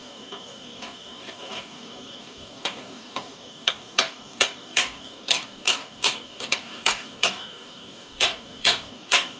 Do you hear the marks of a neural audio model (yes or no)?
yes